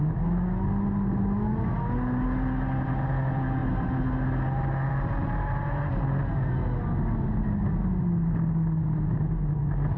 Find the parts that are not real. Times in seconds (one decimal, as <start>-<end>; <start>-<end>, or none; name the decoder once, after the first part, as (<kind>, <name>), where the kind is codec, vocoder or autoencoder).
none